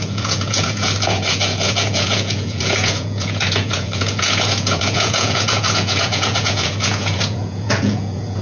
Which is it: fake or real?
fake